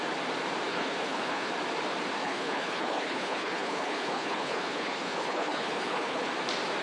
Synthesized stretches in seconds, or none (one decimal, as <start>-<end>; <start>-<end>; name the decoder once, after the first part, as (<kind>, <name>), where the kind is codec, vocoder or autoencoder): 0.7-1.5 (codec, HILCodec); 2.2-6.3